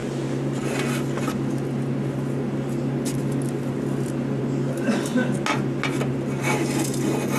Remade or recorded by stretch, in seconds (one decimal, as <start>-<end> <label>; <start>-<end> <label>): 0.0-7.4 recorded